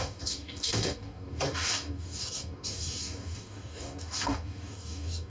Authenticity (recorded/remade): remade